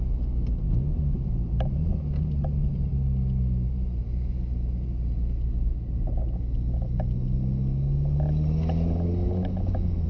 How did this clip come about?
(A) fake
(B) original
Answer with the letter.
B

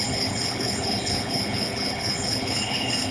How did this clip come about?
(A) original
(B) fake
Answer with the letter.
B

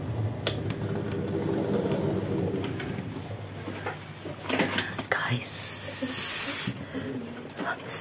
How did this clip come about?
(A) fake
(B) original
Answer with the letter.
B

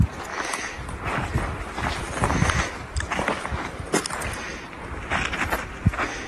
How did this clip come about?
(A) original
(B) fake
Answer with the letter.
A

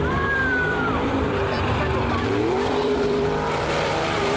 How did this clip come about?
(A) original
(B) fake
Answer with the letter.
B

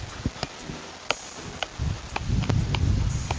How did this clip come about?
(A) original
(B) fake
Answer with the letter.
A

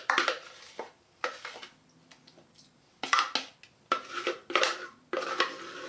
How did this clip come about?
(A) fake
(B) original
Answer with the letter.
B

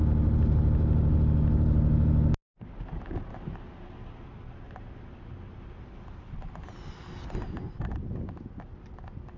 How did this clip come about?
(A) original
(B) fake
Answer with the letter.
A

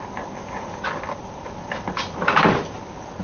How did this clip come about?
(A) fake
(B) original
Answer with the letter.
B